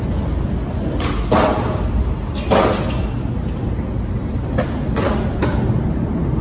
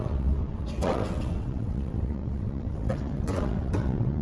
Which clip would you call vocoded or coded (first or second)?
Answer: second